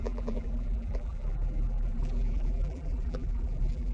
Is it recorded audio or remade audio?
remade